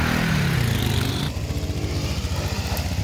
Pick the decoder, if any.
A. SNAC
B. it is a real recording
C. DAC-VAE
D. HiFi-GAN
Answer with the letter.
B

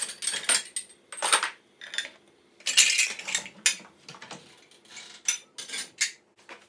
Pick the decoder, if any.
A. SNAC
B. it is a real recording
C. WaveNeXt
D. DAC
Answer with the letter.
B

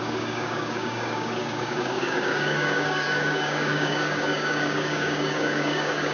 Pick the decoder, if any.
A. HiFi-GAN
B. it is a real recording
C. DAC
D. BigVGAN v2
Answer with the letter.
C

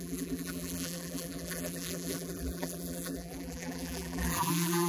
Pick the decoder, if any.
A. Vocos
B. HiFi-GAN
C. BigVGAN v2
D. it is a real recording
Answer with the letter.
C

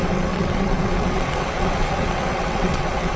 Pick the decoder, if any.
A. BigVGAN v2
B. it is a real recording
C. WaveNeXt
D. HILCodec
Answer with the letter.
C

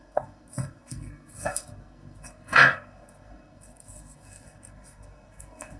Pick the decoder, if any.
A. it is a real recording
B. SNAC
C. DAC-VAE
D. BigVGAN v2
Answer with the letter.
B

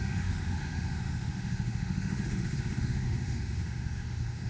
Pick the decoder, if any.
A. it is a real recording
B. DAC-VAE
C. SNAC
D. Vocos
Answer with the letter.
B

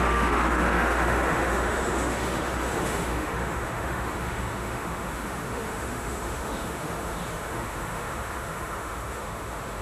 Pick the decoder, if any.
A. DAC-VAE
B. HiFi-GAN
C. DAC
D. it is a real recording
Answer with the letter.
A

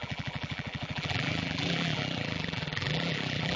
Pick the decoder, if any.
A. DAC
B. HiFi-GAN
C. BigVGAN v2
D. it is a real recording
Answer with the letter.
C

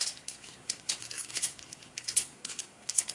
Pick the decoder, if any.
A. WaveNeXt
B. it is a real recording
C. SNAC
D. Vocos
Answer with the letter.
C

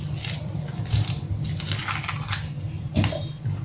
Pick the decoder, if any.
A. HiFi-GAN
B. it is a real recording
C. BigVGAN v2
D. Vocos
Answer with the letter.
B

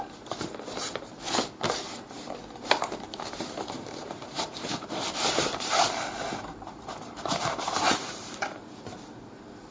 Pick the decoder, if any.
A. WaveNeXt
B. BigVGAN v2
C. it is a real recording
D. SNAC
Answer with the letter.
B